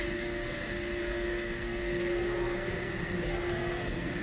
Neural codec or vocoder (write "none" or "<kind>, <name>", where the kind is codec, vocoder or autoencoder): codec, SNAC